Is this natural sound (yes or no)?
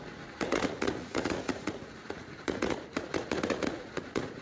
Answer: no